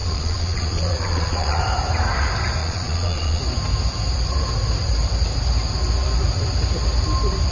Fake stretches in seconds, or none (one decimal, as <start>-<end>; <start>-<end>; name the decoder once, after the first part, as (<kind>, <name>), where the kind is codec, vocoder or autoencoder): 0.0-1.6 (vocoder, Vocos); 2.6-3.4